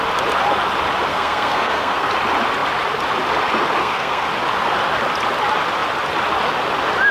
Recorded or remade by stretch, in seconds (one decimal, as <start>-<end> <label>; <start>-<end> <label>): 0.0-1.1 recorded; 1.1-2.1 remade; 2.1-3.8 recorded; 3.8-4.3 remade; 4.3-7.1 recorded